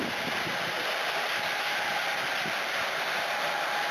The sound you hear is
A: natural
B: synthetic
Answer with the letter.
A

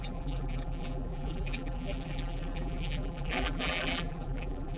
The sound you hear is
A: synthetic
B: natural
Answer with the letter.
A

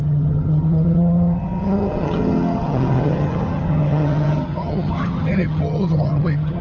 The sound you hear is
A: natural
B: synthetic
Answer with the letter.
B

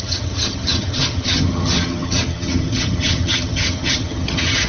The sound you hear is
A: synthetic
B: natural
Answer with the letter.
A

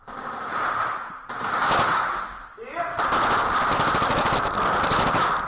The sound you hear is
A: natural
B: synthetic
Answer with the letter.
A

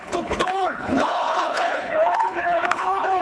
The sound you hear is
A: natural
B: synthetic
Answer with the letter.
B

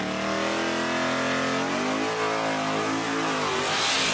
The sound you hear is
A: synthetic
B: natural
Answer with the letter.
B